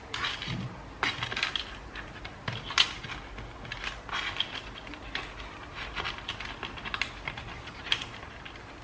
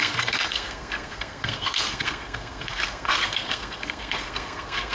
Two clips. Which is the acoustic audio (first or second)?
first